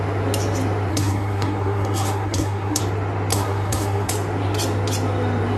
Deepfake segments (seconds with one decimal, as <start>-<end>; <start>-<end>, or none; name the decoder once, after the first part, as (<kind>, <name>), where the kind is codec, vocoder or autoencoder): 0.9-2.8 (codec, SNAC); 3.3-4.1